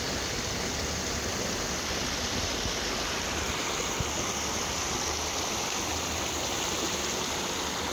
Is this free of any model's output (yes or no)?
yes